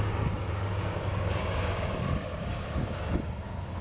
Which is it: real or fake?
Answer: fake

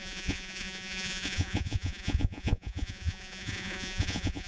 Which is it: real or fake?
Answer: fake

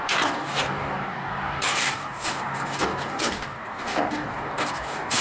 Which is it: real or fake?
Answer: fake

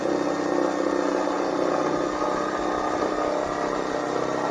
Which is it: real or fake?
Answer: real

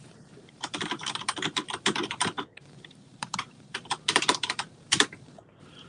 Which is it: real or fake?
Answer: fake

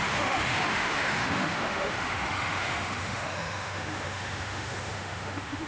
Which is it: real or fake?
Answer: fake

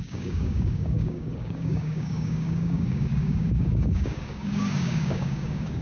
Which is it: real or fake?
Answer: fake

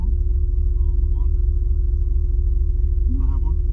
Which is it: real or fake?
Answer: fake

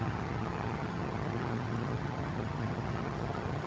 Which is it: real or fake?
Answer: fake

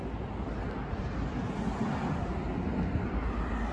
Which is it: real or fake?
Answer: real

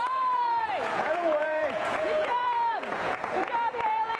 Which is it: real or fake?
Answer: fake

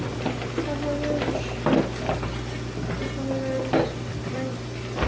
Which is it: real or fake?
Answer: real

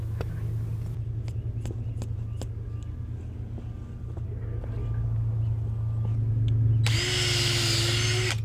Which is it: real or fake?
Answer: real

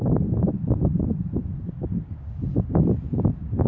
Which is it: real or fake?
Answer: fake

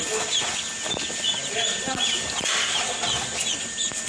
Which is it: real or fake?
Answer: real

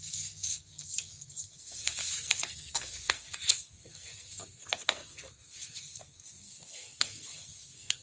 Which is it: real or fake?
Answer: fake